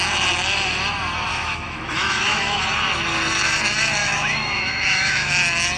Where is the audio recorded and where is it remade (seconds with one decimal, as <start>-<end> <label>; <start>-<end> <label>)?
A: 0.0-1.3 recorded; 1.3-2.6 remade; 2.6-4.0 recorded; 4.0-5.3 remade; 5.3-5.8 recorded